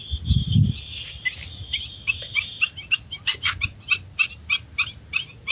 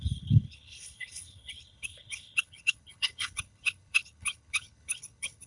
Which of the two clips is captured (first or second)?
first